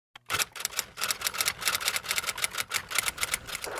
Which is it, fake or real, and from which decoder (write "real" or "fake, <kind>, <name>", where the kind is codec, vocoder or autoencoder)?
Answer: real